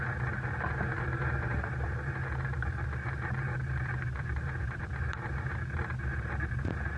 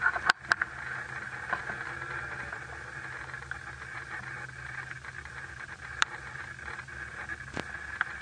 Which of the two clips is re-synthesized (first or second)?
first